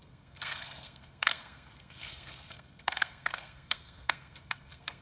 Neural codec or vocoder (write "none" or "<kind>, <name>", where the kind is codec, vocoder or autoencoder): codec, SNAC